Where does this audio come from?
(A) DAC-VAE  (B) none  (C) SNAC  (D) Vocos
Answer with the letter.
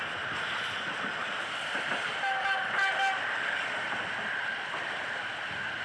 B